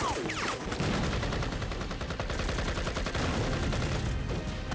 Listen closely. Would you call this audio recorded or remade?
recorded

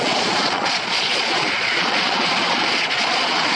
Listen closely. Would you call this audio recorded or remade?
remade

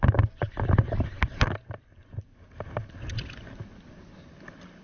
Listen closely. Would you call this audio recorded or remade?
recorded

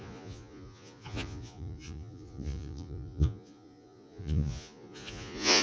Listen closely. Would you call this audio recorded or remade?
remade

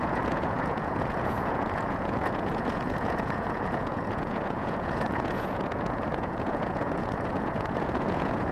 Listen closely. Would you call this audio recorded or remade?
remade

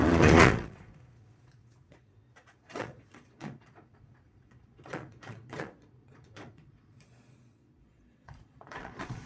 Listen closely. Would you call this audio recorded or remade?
remade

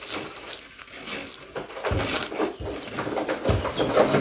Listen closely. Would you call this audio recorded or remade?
recorded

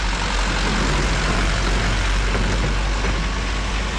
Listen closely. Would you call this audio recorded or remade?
recorded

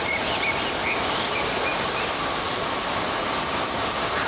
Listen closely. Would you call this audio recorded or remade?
recorded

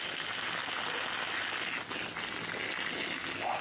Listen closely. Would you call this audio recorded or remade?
recorded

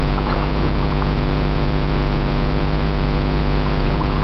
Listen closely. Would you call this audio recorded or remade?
remade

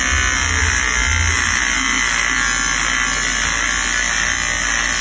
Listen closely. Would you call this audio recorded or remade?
recorded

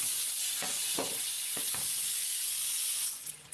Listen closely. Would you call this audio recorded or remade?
remade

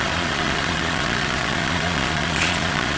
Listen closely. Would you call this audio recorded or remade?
remade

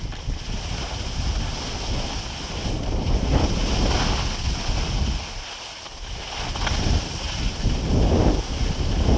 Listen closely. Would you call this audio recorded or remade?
recorded